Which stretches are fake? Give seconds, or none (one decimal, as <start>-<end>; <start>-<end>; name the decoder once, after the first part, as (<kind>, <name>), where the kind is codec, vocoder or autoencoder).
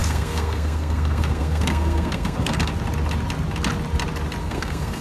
0.0-2.7 (codec, SNAC); 4.4-5.0